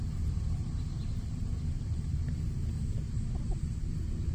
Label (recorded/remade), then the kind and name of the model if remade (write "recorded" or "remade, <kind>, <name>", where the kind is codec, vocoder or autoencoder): recorded